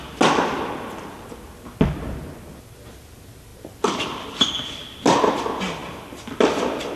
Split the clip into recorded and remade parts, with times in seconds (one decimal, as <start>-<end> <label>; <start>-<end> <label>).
0.0-7.0 recorded

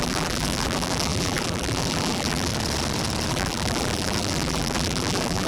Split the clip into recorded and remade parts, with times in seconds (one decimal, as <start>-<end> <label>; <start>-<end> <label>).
0.0-2.5 remade; 2.5-3.3 recorded; 3.3-5.5 remade